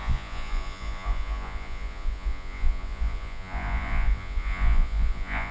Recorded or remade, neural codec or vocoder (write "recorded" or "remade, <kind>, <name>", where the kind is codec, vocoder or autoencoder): remade, vocoder, Vocos